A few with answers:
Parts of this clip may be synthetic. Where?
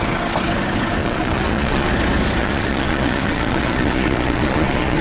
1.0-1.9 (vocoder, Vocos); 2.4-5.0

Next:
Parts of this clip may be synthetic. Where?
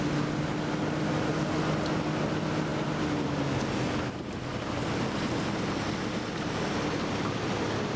none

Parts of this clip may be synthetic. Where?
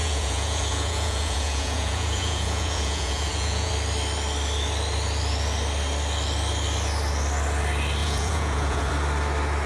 0.0-3.7 (vocoder, Vocos); 8.0-8.9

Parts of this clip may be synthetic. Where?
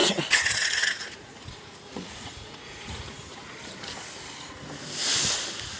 0.0-3.5 (vocoder, Vocos)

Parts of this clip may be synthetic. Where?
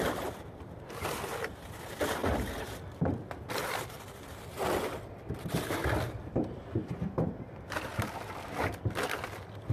none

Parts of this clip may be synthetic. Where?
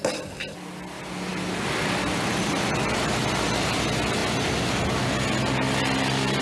none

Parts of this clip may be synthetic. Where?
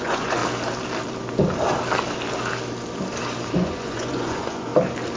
0.0-0.4 (vocoder, Vocos); 3.5-4.7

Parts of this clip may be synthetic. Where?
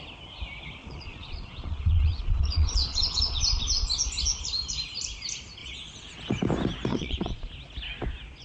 0.8-3.9 (vocoder, Vocos); 5.6-6.2; 6.9-7.5